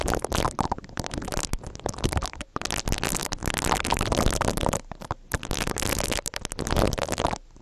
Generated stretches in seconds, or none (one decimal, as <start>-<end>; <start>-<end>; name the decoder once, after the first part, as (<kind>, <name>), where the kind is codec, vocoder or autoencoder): none